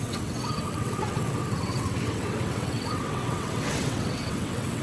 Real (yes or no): no